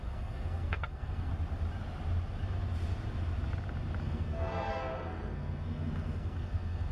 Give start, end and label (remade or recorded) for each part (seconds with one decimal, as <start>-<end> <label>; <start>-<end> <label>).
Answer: 0.0-1.3 remade; 1.3-4.0 recorded; 4.0-6.9 remade